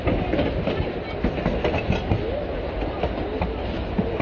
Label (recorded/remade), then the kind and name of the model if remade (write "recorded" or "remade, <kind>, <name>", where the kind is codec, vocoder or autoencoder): recorded